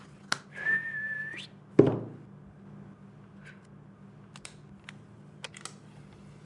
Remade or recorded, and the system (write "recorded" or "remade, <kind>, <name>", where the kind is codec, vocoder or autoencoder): recorded